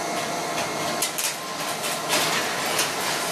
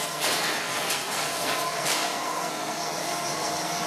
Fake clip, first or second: second